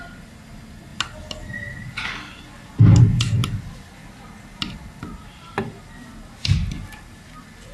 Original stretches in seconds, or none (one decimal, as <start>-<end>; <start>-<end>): 0.0-7.7